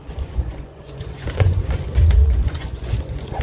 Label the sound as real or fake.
fake